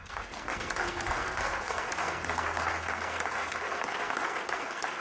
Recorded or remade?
remade